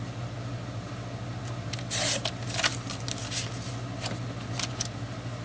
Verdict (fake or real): real